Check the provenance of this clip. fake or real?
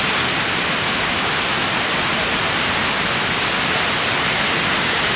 real